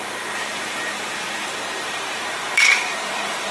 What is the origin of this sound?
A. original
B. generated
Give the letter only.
B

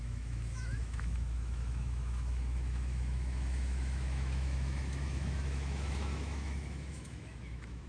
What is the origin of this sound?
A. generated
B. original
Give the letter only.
A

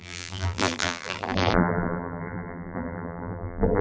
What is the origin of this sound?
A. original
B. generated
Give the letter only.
B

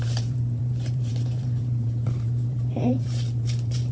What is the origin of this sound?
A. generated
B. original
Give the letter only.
A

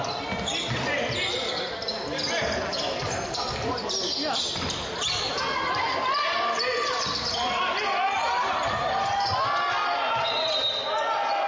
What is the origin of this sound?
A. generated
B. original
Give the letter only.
B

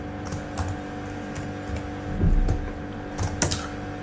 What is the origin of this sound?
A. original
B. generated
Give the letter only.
A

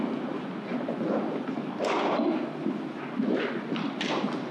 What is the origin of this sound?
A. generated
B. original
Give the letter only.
B